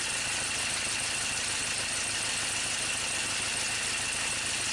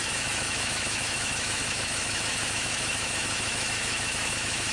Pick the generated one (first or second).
second